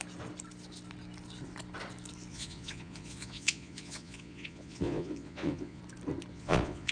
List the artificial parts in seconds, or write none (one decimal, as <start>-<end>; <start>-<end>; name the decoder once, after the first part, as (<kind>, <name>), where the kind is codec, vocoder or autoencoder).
2.3-5.8 (vocoder, Vocos); 6.3-6.9